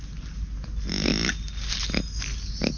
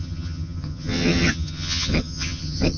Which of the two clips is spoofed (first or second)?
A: second